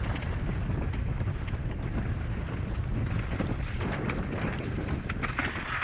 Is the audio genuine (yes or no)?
yes